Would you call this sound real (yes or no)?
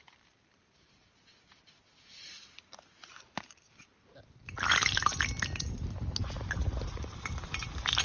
yes